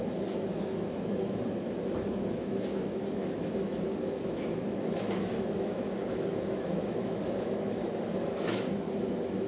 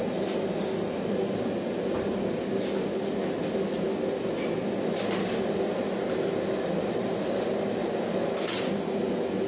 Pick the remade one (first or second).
first